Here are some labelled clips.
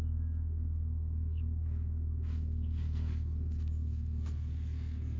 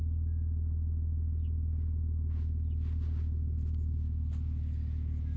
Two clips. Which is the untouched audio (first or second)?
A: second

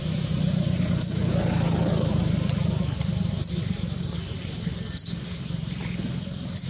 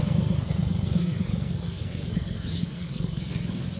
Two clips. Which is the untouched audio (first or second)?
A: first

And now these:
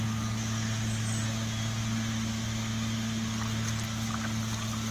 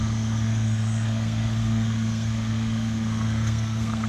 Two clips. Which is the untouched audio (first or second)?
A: first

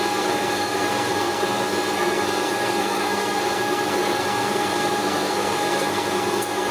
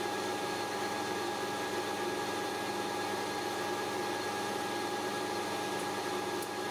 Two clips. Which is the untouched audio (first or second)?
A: second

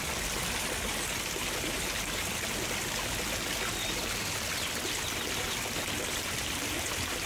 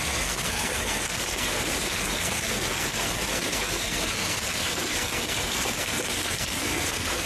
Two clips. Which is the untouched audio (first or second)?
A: first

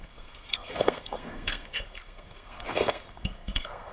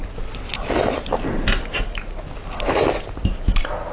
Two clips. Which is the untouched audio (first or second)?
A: second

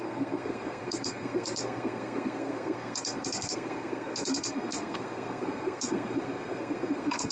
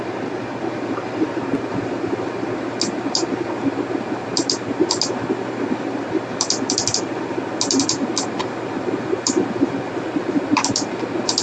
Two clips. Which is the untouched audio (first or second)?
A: second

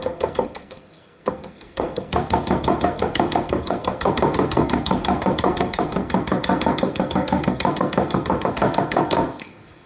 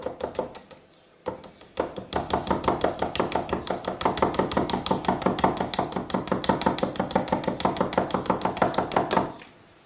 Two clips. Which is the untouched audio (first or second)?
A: second